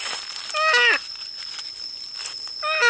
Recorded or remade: recorded